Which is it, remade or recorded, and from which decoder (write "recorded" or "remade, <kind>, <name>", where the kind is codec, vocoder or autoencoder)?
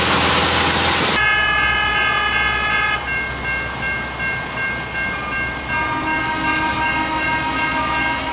recorded